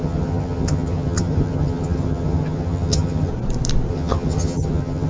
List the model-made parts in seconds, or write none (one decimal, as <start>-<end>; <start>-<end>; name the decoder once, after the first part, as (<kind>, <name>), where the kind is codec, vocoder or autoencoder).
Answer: 0.0-3.3 (vocoder, HiFi-GAN); 3.9-5.1